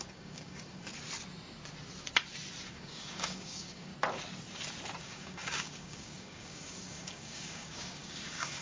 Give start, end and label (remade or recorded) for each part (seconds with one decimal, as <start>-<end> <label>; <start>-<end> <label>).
0.0-0.9 remade; 0.9-2.7 recorded; 2.7-3.9 remade; 3.9-5.0 recorded; 5.0-8.6 remade